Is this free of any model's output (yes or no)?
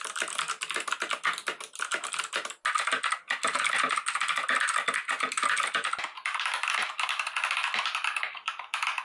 yes